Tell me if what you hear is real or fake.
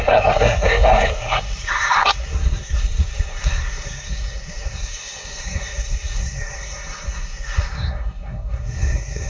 fake